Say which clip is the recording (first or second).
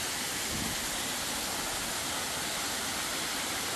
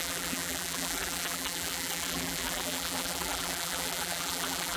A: first